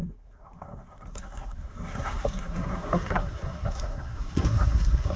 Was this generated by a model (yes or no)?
yes